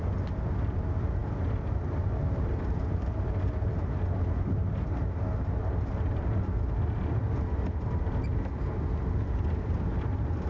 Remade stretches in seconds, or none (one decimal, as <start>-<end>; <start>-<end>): none